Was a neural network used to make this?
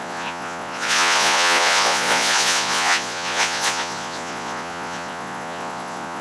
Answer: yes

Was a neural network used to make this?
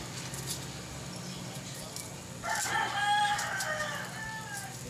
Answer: no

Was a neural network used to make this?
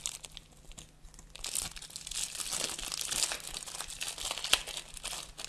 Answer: no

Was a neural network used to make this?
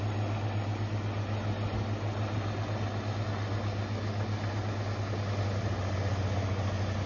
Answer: no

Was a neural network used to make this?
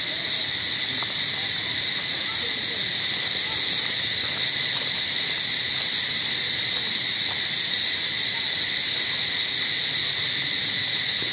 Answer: no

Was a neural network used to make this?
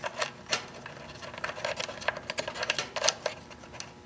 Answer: no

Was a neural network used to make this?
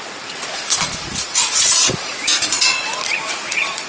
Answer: yes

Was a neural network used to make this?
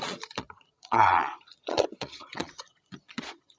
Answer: yes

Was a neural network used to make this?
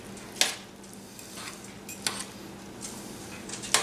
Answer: no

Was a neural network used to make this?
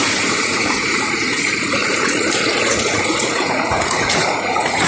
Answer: yes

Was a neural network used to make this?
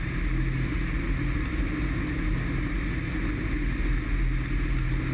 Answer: no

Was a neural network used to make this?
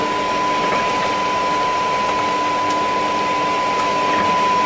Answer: no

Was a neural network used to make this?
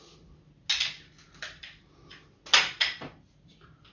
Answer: no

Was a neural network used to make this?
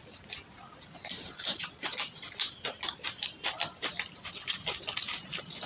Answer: no